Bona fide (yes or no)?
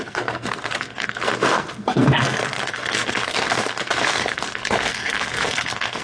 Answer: no